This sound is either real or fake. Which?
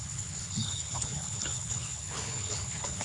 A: fake